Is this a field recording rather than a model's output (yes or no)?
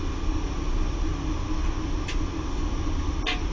yes